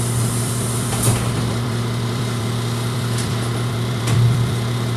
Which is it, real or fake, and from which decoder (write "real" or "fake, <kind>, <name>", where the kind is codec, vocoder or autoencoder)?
fake, vocoder, BigVGAN v2